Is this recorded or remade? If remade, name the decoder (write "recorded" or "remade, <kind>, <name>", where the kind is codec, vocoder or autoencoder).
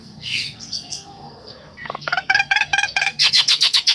remade, codec, SNAC